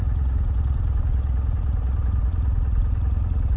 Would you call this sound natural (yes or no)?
no